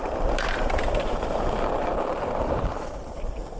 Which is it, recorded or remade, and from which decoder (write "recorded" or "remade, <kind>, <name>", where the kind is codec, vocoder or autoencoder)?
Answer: remade, vocoder, BigVGAN v2